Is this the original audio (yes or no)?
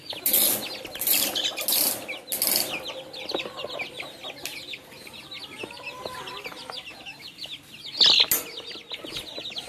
yes